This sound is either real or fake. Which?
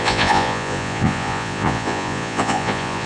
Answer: fake